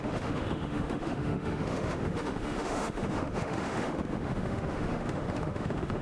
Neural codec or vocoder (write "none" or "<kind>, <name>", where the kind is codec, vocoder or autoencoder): autoencoder, DAC-VAE